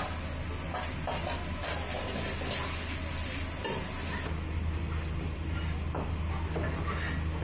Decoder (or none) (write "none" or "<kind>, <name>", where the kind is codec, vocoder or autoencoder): none